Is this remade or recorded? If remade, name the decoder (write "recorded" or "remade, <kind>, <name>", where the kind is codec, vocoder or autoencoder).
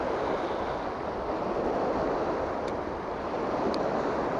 recorded